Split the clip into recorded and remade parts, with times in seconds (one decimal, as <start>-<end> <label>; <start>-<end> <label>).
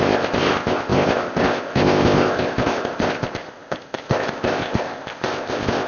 0.0-5.9 remade